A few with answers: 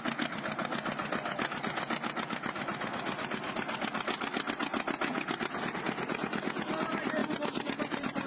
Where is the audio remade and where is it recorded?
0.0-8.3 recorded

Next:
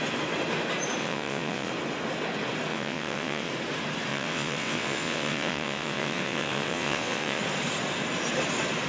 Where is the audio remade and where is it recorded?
0.0-1.0 recorded; 1.0-1.7 remade; 1.7-2.7 recorded; 2.7-3.5 remade; 3.5-4.1 recorded; 4.1-7.4 remade; 7.4-8.9 recorded

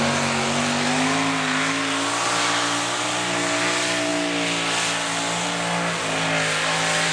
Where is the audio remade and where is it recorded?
0.0-7.1 recorded

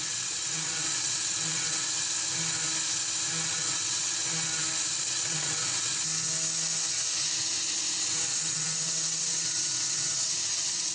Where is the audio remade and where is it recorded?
0.0-1.9 remade; 1.9-3.5 recorded; 3.5-4.2 remade; 4.2-5.0 recorded; 5.0-5.9 remade; 5.9-7.5 recorded; 7.5-10.9 remade

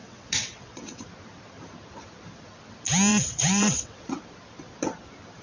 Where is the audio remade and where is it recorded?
0.0-1.0 remade; 1.0-3.1 recorded; 3.1-4.2 remade; 4.2-5.4 recorded

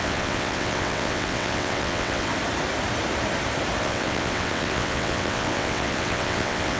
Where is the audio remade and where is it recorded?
0.0-2.3 remade; 2.3-3.8 recorded; 3.8-6.8 remade

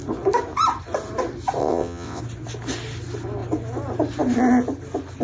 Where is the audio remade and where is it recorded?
0.0-1.6 recorded; 1.6-2.2 remade; 2.2-5.2 recorded